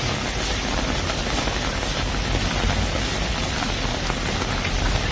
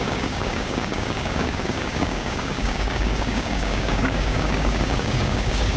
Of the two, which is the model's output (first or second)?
second